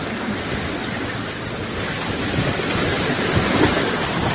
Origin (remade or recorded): recorded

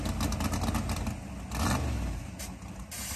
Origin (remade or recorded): recorded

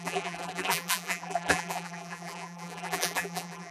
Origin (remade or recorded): remade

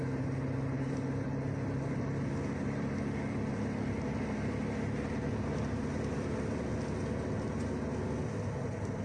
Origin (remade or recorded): recorded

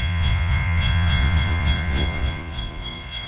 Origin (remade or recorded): remade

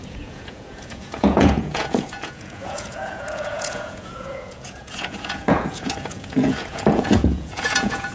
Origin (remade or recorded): remade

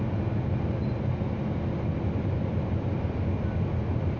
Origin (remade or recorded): recorded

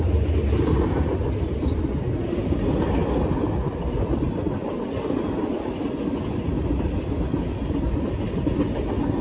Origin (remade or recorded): recorded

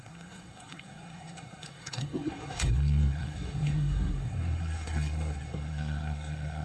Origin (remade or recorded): remade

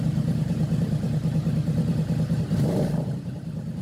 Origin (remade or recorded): remade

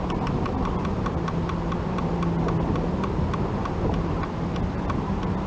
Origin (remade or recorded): recorded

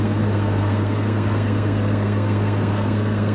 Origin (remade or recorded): remade